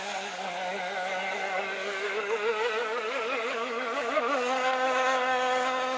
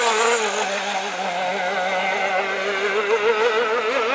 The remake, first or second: first